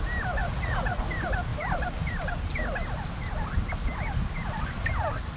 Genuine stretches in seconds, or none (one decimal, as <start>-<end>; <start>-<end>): 0.0-0.4; 1.0-5.4